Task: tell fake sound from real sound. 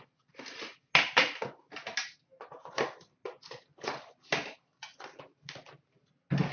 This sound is real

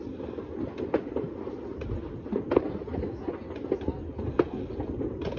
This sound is real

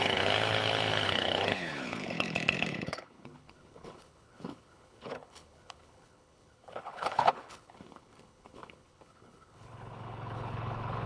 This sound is fake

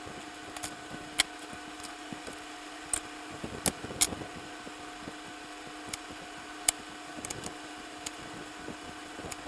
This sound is real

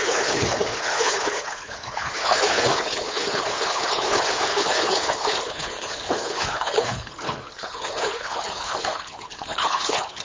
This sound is fake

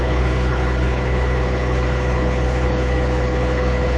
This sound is fake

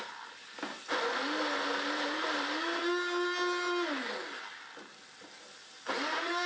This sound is real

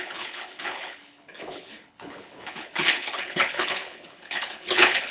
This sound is fake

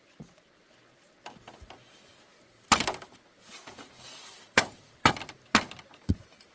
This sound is real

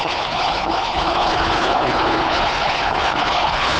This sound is fake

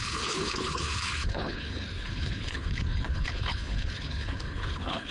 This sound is fake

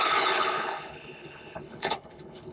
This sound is fake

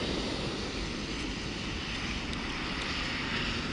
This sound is real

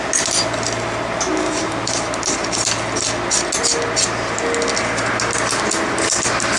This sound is real